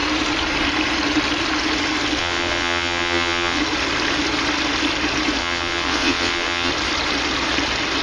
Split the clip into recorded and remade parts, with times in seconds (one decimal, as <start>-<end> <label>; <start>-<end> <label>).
0.0-2.2 recorded; 2.2-3.6 remade; 3.6-5.4 recorded; 5.4-6.7 remade; 6.7-8.0 recorded